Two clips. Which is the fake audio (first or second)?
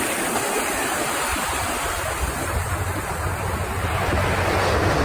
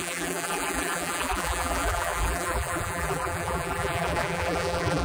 second